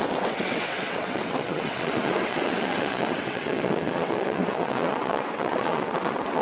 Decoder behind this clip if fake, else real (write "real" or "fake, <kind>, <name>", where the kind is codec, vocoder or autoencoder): fake, vocoder, WaveNeXt